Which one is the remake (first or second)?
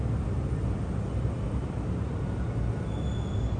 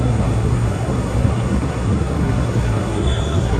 second